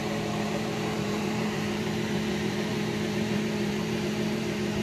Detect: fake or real fake